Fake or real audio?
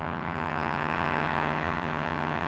fake